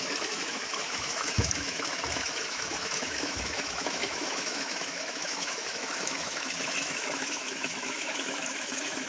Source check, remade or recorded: remade